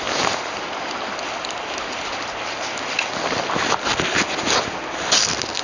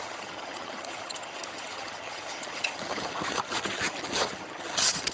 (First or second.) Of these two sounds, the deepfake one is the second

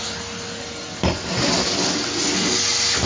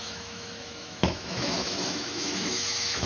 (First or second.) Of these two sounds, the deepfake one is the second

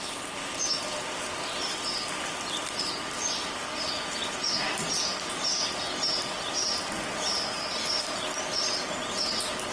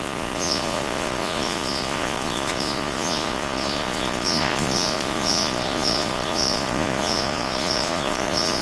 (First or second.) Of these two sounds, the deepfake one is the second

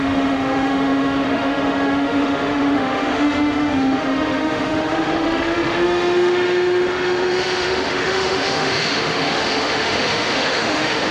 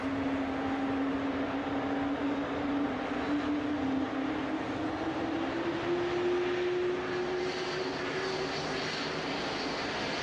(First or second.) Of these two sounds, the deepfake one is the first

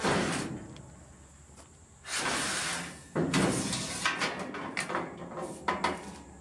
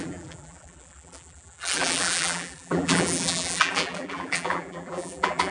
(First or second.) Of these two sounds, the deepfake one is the second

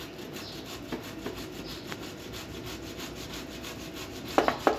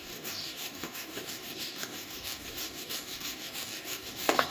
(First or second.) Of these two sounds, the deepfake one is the second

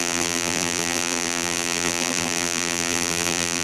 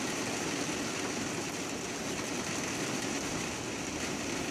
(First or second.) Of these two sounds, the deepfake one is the first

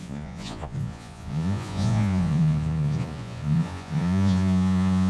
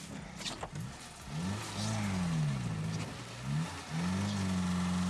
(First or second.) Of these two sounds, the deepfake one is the first